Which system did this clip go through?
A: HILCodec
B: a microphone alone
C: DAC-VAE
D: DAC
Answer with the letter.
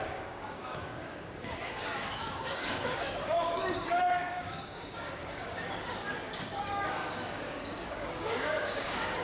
D